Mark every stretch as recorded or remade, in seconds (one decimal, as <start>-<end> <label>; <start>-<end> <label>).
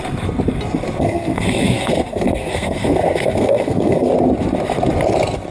0.0-1.0 recorded; 1.0-4.1 remade; 4.1-5.5 recorded